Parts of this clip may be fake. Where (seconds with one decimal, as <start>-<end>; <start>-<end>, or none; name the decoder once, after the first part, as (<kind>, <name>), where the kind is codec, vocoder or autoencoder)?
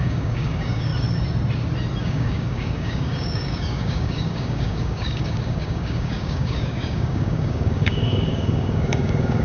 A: 0.0-0.9 (codec, DAC); 2.0-9.4